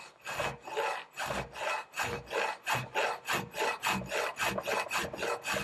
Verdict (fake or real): real